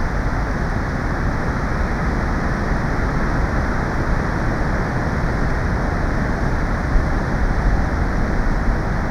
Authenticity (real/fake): real